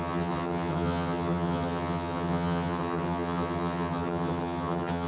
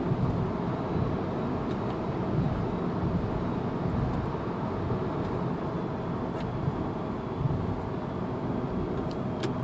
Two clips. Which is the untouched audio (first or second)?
second